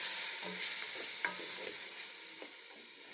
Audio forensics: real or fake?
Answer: real